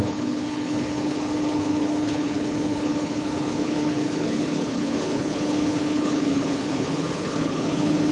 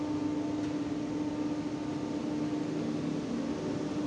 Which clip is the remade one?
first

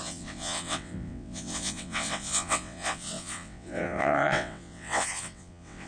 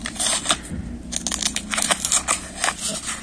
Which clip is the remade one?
first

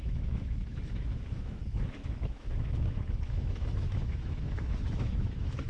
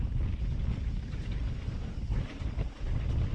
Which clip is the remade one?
first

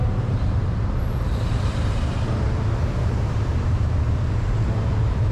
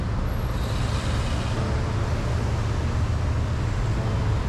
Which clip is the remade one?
first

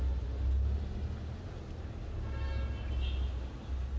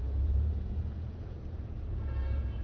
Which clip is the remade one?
second